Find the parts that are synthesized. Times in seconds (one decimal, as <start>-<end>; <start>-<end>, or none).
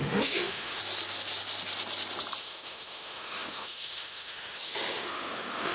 0.0-0.8; 2.4-5.7